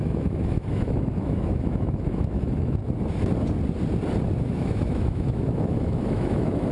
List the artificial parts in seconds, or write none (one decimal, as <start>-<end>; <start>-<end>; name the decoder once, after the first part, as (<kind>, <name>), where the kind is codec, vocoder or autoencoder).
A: 0.0-2.8 (autoencoder, DAC-VAE); 4.4-6.7